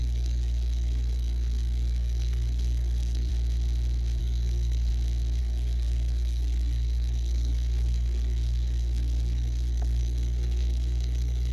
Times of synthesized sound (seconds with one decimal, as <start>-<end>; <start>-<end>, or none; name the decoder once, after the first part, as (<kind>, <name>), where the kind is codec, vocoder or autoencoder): 0.0-3.3 (codec, SNAC); 4.2-4.9; 5.4-11.5